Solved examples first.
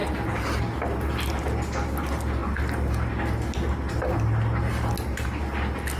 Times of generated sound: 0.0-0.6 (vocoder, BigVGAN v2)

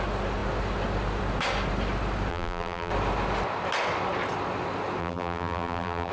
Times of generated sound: 2.3-2.9 (vocoder, BigVGAN v2); 5.0-6.1